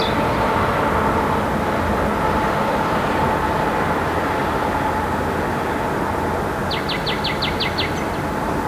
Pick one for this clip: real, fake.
real